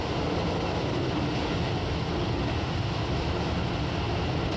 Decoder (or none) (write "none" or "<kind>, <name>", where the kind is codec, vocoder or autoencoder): none